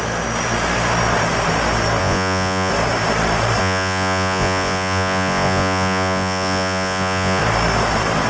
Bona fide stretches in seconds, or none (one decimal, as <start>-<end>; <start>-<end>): 0.0-2.0; 2.7-3.6; 7.4-8.3